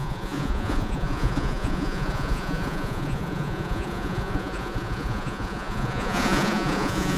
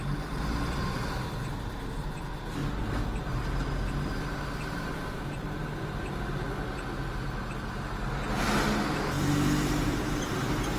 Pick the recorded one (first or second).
second